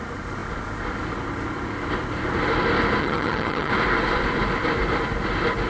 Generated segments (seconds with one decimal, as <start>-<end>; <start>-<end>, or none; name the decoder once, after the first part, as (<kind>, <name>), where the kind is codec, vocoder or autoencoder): 3.0-3.7 (vocoder, HiFi-GAN)